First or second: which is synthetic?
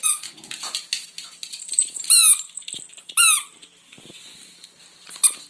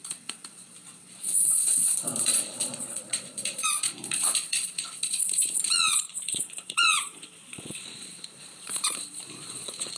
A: second